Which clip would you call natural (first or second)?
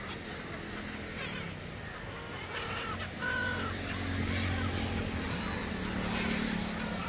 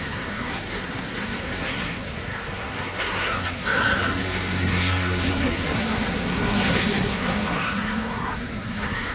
first